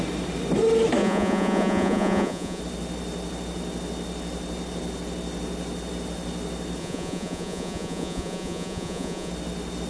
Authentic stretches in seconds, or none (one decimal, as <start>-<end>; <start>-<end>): 0.0-1.0; 2.6-6.8; 9.3-9.9

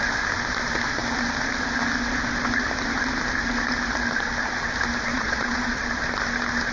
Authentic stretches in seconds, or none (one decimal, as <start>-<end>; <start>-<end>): 0.0-5.1; 5.8-6.7

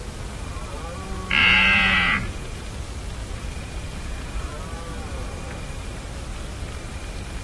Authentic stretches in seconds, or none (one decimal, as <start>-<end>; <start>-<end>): 0.0-1.4; 2.6-3.2; 4.5-7.4

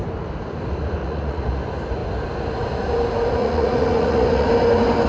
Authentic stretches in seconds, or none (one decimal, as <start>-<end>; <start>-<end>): 0.0-1.0; 1.6-3.4; 4.5-5.1

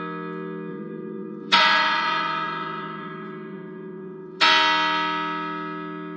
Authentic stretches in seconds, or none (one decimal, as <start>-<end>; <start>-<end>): 0.0-0.7; 4.4-6.2

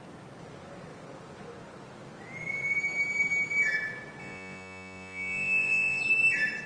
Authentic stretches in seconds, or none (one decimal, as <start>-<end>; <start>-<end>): 0.0-4.2; 6.0-6.7

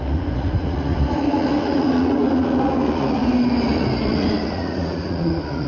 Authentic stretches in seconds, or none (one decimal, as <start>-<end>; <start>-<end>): 3.2-3.7